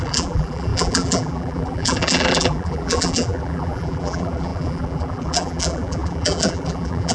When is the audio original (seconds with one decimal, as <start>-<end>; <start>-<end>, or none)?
none